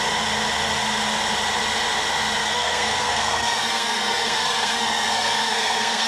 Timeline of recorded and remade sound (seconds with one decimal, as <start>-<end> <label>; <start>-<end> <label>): 0.0-2.4 recorded; 2.4-6.1 remade